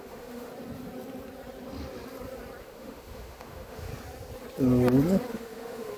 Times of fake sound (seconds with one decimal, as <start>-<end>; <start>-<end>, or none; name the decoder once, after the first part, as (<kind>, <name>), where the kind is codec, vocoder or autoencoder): 0.0-0.5 (autoencoder, DAC-VAE); 2.6-3.9; 5.3-6.0